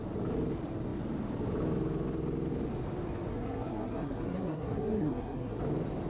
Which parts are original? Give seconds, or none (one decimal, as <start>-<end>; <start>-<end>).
0.0-3.3; 5.6-6.1